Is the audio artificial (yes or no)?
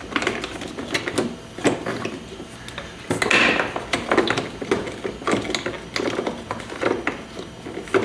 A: no